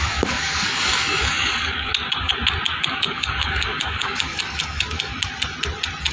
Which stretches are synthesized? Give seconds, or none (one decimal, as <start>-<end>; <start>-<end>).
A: 0.0-1.9; 2.8-5.1